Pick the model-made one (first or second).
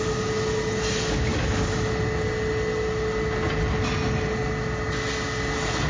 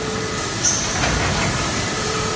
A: second